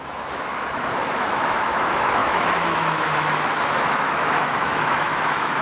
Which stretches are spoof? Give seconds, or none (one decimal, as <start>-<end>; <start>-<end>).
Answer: 0.0-5.6